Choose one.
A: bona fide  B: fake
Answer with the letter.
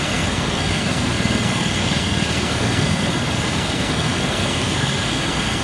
B